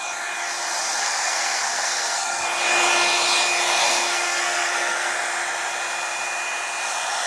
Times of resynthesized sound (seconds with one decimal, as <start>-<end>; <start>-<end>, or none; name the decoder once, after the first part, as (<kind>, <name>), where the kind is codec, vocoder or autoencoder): 1.0-2.5 (codec, SNAC); 3.8-5.1